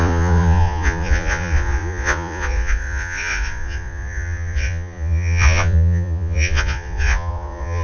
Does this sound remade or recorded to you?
remade